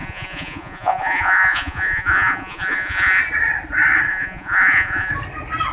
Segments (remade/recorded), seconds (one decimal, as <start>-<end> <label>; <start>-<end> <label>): 0.0-3.2 remade; 3.2-4.1 recorded; 4.1-5.1 remade; 5.1-5.7 recorded